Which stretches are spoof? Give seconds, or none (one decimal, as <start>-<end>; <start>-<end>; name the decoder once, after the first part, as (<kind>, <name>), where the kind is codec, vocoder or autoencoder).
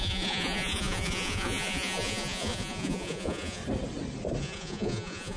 0.0-3.6 (vocoder, Vocos); 4.4-5.4